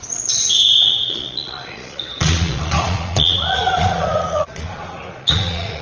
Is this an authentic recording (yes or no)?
no